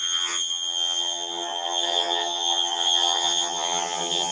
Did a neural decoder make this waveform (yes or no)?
yes